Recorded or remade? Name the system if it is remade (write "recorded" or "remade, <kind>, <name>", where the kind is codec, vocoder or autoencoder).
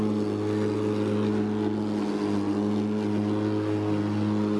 recorded